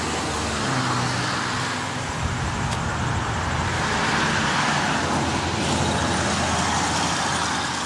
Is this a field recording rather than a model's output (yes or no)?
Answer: yes